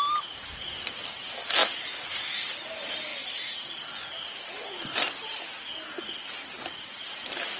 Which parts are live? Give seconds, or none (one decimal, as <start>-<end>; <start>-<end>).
0.0-1.6; 2.6-7.6